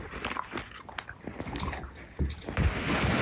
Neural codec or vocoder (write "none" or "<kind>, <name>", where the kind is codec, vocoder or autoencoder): vocoder, BigVGAN v2